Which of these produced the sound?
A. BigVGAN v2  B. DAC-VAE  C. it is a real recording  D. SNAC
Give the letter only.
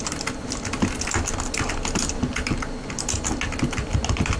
C